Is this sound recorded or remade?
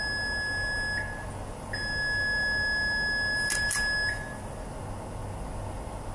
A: recorded